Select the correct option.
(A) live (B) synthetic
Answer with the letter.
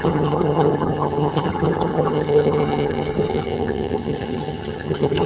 B